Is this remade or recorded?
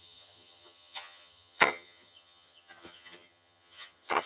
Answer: remade